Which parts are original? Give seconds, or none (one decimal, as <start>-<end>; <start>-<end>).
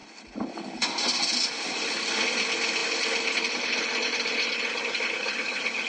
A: 0.0-5.9